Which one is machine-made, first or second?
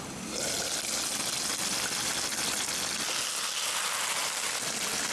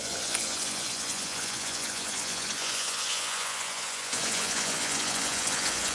second